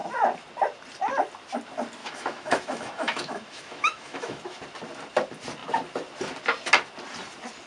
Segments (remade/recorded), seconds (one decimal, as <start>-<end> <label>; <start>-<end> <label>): 0.0-2.0 recorded; 2.0-4.6 remade; 4.6-7.7 recorded